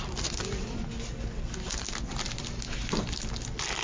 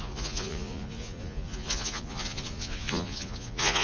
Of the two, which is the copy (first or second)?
second